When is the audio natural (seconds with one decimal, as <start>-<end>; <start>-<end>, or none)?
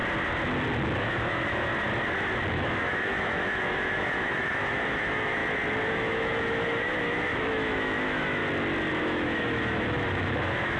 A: 0.0-1.0; 1.7-2.5; 5.4-5.9; 8.4-9.0